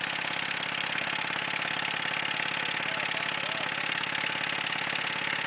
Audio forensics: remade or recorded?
recorded